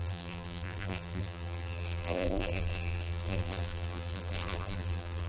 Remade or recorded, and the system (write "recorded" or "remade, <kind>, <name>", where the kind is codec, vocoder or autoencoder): remade, vocoder, BigVGAN v2